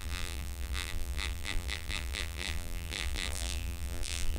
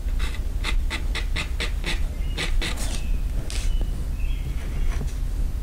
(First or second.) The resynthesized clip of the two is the first